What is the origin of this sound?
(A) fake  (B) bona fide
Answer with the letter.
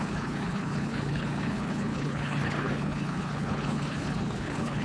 A